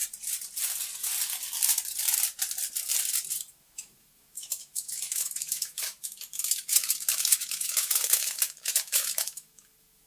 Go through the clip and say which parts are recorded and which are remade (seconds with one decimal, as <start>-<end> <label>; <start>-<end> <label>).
0.0-3.5 recorded; 3.5-10.1 remade